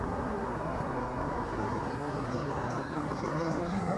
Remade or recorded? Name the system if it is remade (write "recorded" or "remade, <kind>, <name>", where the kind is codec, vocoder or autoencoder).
remade, codec, SNAC